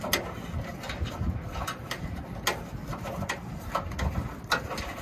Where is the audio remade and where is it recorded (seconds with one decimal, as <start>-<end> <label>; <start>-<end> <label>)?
0.0-5.0 recorded